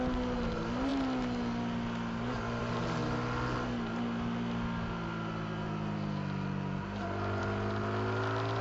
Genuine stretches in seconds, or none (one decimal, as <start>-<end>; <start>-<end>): 0.0-8.6